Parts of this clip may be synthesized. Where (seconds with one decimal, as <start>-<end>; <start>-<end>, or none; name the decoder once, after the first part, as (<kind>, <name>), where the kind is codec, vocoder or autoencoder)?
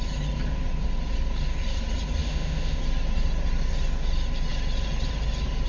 2.2-2.8 (autoencoder, DAC-VAE)